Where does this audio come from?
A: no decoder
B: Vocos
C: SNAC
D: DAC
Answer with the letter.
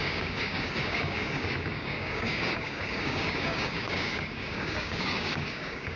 D